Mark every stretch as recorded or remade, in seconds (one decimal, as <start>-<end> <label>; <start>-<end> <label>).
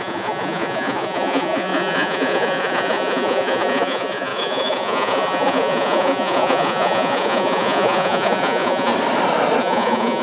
0.0-8.9 remade; 8.9-9.6 recorded; 9.6-10.2 remade